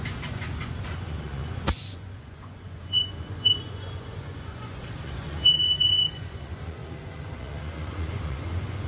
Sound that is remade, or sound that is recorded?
remade